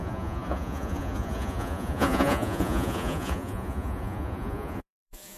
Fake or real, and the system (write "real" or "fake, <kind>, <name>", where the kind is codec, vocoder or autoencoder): fake, vocoder, Vocos